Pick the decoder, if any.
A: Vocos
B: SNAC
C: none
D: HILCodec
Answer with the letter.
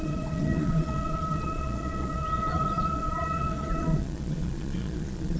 A